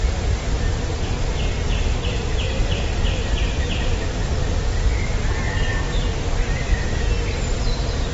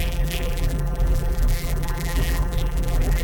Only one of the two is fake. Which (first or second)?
second